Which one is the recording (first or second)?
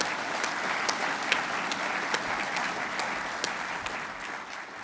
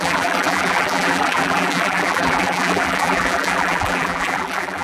first